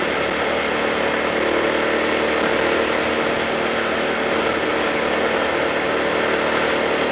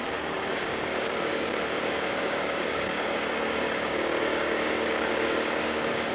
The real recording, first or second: first